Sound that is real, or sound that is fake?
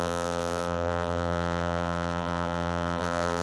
fake